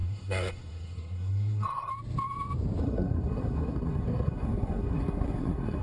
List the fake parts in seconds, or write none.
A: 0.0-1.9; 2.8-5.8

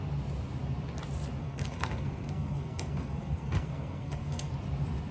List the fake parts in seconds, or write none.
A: 1.4-4.5

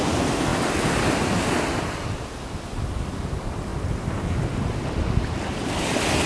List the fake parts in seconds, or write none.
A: none

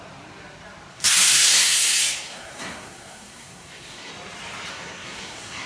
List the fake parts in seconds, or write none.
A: 0.9-4.1; 4.7-5.7